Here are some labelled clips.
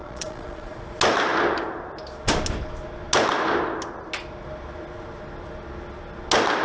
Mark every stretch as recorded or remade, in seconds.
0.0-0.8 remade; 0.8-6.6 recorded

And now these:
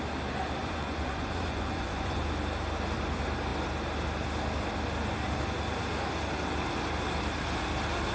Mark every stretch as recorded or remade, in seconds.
0.0-0.6 recorded; 0.6-2.3 remade; 2.3-8.1 recorded

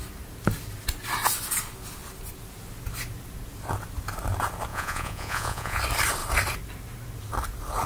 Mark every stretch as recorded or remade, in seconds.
0.0-4.7 recorded; 4.7-5.8 remade; 5.8-7.9 recorded

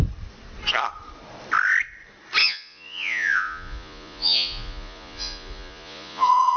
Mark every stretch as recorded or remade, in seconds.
0.0-2.4 recorded; 2.4-6.6 remade